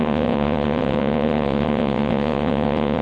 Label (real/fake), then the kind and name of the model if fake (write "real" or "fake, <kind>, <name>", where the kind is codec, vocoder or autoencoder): fake, vocoder, WaveNeXt